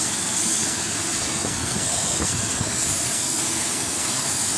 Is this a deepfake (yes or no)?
yes